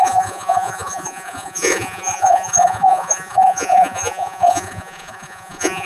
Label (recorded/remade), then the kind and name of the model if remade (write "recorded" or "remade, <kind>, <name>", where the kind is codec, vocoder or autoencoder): remade, vocoder, Vocos